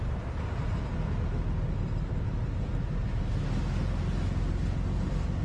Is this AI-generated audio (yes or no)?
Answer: no